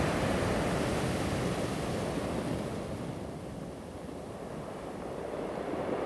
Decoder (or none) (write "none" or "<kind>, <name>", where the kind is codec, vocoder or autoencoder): none